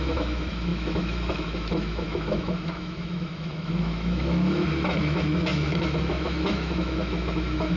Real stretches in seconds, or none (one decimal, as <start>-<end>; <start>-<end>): none